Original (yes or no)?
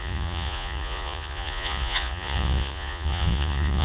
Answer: no